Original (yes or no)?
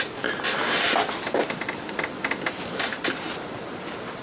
yes